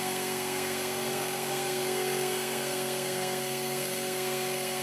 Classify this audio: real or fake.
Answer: fake